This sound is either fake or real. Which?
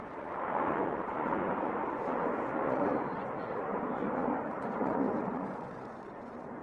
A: fake